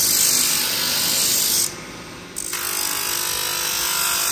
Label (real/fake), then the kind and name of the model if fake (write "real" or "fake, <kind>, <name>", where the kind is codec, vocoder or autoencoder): real